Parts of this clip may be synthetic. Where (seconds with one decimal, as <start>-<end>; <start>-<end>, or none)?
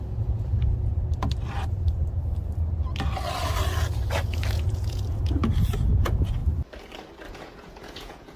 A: 0.0-0.5; 4.3-5.4; 5.9-6.4; 7.3-8.4